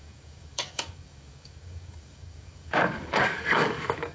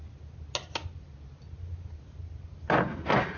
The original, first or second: second